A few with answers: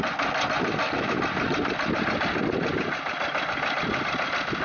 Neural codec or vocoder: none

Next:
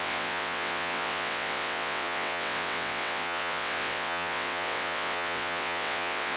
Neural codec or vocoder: vocoder, WaveNeXt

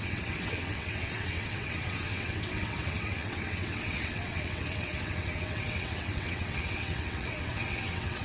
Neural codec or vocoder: vocoder, WaveNeXt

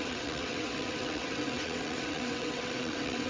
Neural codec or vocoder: vocoder, WaveNeXt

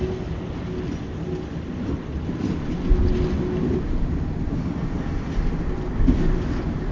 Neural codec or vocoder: none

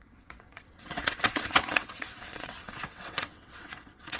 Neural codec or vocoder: vocoder, WaveNeXt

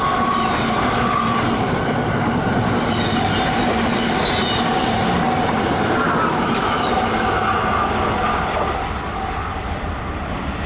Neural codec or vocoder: none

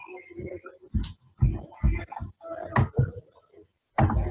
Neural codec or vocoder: none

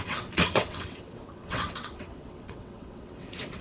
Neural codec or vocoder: vocoder, WaveNeXt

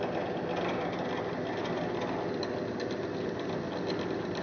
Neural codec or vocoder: none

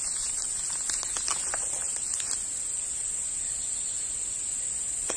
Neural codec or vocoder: none